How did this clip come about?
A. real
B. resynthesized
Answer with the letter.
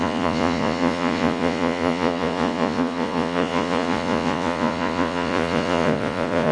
B